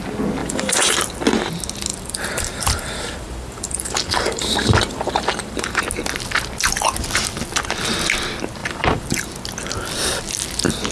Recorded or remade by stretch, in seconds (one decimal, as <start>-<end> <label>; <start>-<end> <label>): 0.0-0.4 recorded; 0.4-0.9 remade; 0.9-1.9 recorded; 1.9-5.8 remade; 5.8-8.6 recorded; 8.6-9.3 remade; 9.3-10.9 recorded